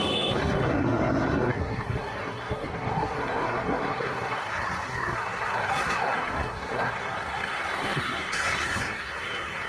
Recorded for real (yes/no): no